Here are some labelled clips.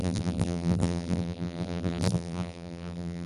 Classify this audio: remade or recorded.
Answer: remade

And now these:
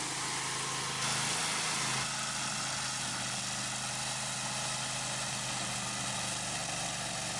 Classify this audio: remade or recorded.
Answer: recorded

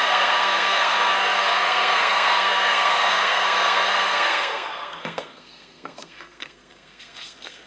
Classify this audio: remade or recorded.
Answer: remade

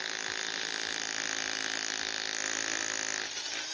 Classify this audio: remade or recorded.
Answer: recorded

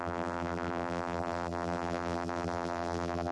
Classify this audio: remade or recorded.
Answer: remade